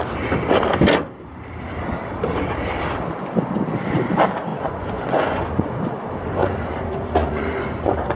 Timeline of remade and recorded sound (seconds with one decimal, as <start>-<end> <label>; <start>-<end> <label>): 0.0-4.5 recorded; 4.5-5.7 remade; 5.7-6.4 recorded; 6.4-8.2 remade